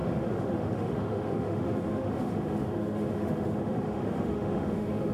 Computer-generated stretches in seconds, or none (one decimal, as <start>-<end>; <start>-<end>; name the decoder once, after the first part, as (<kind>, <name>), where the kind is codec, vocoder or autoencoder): 0.0-5.1 (autoencoder, DAC-VAE)